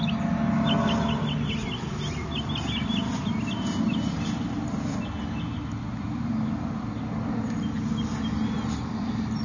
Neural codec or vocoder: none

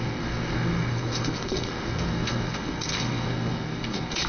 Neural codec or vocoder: codec, SNAC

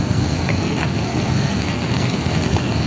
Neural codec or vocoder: codec, SNAC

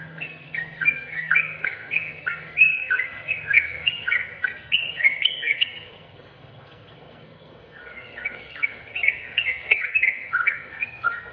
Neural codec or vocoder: codec, SNAC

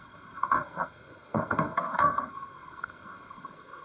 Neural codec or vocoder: codec, SNAC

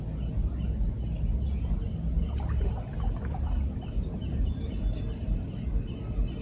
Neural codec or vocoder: none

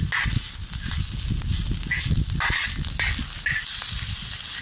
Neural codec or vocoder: none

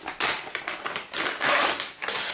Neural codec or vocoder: none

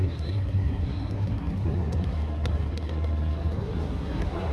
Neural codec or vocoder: codec, SNAC